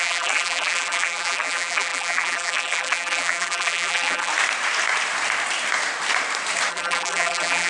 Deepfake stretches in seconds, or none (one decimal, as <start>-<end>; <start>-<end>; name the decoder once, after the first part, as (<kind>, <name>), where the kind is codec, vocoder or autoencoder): 0.0-4.3 (vocoder, BigVGAN v2); 6.7-7.7